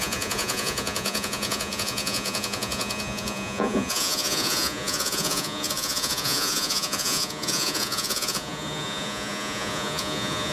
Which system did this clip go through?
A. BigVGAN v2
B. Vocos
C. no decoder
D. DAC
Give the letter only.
B